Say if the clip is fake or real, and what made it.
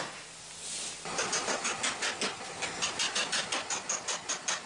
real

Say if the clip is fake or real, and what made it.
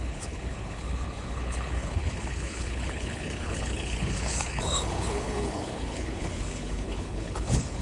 fake, codec, HILCodec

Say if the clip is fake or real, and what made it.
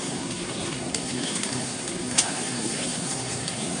fake, codec, SNAC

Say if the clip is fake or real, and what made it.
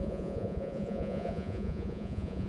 fake, vocoder, Vocos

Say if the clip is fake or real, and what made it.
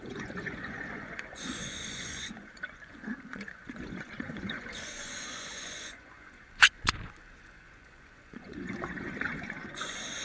fake, vocoder, Vocos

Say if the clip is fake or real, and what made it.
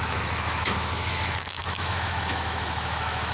fake, autoencoder, DAC-VAE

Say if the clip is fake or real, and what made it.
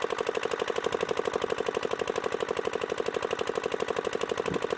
real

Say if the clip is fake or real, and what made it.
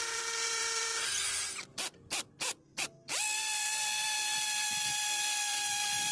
fake, vocoder, BigVGAN v2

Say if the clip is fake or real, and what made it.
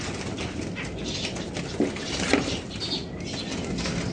real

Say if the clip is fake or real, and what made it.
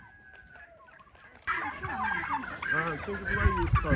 real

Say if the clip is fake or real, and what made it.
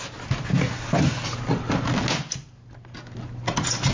real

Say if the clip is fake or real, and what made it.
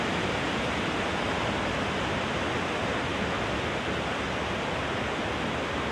real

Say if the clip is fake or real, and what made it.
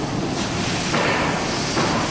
real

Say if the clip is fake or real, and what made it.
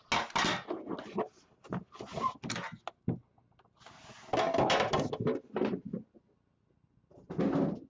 real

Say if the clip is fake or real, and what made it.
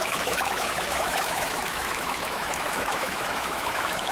fake, autoencoder, DAC-VAE